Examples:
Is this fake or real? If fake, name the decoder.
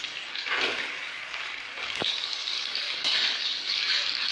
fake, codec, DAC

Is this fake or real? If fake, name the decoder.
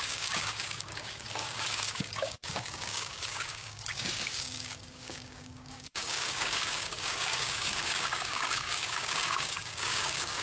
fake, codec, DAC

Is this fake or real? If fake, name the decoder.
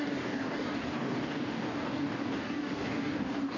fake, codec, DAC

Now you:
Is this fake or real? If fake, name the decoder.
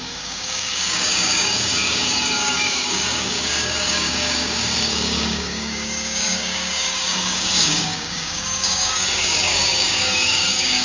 fake, codec, DAC